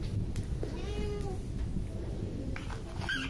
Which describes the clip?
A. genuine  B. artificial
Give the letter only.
A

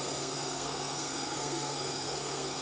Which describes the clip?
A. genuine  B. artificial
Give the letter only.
B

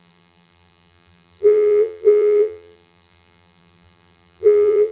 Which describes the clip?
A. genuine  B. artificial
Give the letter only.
B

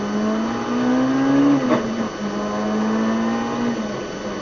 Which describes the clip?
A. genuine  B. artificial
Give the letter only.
A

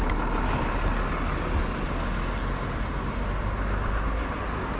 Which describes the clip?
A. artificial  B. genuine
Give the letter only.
B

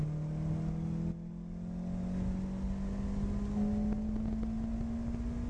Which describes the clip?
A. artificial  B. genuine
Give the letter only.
B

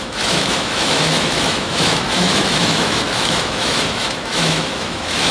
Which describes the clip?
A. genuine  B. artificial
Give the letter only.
B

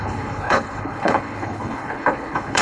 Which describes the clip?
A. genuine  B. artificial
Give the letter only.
B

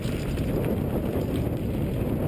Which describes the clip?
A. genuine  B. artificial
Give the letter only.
A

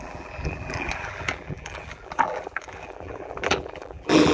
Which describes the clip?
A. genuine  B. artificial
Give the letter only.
B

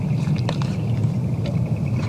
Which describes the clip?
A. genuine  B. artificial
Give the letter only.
B